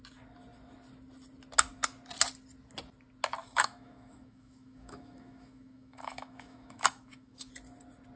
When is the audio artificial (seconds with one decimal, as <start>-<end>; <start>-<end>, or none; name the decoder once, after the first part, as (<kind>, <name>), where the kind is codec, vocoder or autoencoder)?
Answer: 3.4-7.5 (autoencoder, DAC-VAE)